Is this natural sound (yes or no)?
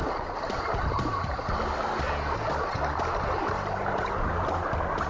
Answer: yes